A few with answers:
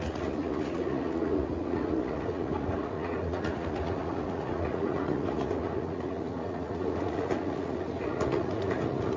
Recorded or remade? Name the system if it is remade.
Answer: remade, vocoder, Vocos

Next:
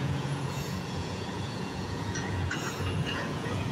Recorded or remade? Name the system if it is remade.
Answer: remade, vocoder, Vocos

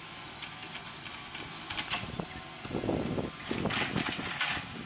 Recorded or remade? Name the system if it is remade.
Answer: recorded